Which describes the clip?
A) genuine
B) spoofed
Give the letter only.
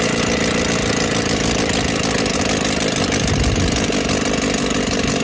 A